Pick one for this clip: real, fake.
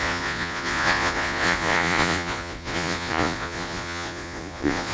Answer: fake